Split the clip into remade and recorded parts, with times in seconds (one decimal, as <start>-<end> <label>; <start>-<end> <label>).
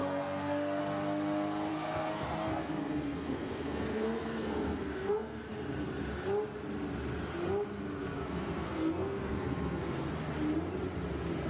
0.0-0.8 remade; 0.8-1.7 recorded; 1.7-5.5 remade; 5.5-8.0 recorded; 8.0-10.1 remade; 10.1-11.5 recorded